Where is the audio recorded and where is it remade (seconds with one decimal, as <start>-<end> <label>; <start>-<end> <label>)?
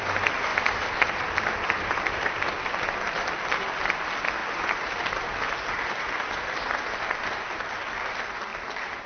0.0-9.1 recorded